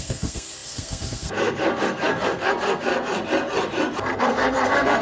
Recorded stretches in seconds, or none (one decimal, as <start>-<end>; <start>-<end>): 2.9-4.2